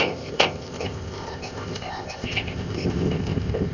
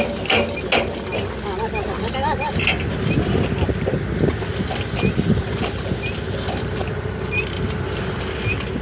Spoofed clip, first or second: first